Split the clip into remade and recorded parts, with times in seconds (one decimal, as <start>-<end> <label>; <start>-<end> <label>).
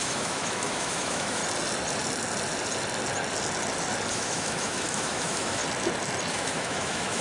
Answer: 0.0-1.4 remade; 1.4-4.1 recorded; 4.1-5.6 remade; 5.6-6.3 recorded; 6.3-7.2 remade